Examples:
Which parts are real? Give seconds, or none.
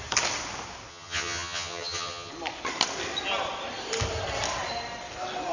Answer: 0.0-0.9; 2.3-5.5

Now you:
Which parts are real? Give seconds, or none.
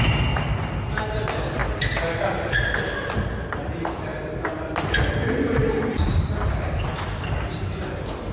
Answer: 0.0-8.3